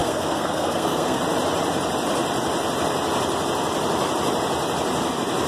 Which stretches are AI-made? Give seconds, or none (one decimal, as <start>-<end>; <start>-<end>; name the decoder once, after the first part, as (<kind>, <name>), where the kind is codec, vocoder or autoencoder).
0.0-1.2 (codec, SNAC)